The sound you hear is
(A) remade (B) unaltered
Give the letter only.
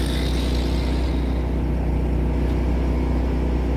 B